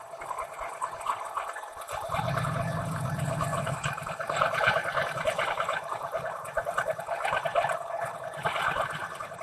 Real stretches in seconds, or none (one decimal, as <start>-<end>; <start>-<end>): 0.0-3.5; 6.8-9.4